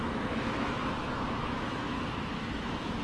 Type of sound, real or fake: fake